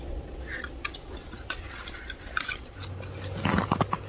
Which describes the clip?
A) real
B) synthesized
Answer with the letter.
A